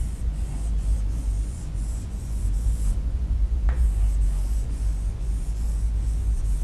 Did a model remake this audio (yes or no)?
yes